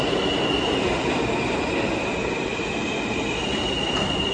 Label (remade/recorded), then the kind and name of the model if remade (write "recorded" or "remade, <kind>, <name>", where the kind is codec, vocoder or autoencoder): recorded